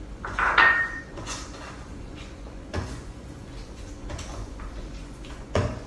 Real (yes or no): no